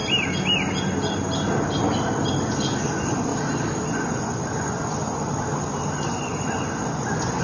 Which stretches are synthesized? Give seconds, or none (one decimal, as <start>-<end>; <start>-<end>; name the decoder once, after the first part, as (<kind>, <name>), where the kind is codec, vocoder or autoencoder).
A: 2.8-3.3 (vocoder, Vocos); 3.9-5.3; 6.1-7.4